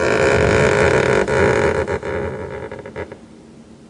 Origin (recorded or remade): recorded